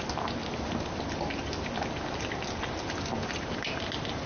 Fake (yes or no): no